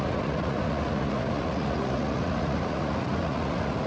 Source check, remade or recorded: remade